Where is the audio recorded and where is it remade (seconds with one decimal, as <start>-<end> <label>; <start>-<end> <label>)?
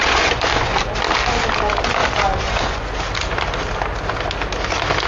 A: 0.0-0.8 remade; 0.8-2.0 recorded; 2.0-2.9 remade; 2.9-5.1 recorded